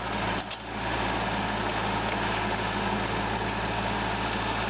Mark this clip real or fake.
real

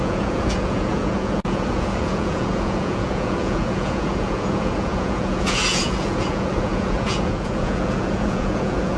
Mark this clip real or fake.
fake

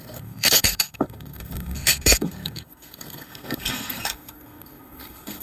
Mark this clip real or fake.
fake